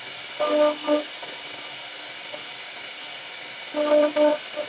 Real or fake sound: real